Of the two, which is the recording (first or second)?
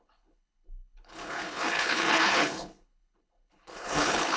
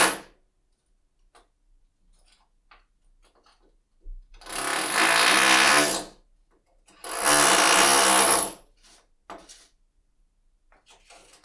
second